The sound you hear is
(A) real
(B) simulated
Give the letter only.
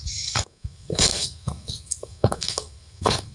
B